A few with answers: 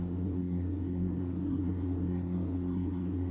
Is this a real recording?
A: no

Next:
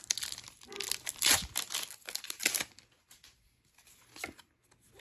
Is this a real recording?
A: yes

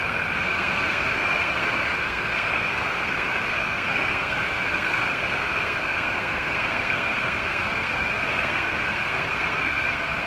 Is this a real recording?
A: no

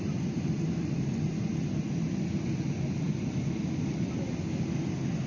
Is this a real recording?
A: yes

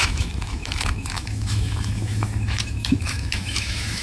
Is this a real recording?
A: no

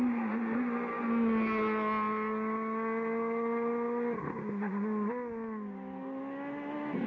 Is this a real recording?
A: yes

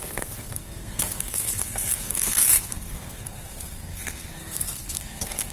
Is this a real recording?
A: no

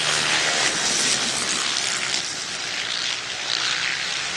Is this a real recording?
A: yes